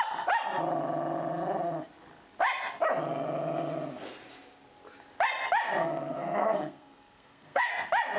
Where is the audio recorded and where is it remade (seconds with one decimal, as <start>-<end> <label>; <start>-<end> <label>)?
0.0-5.8 recorded; 5.8-7.7 remade; 7.7-8.2 recorded